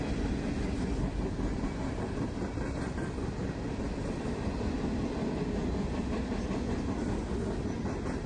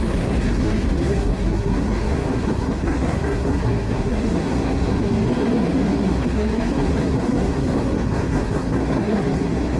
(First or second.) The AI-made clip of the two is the second